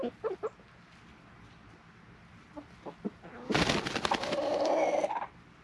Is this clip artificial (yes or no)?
no